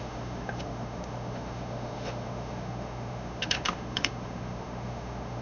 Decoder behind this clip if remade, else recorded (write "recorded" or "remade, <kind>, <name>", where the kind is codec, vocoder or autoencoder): remade, autoencoder, DAC-VAE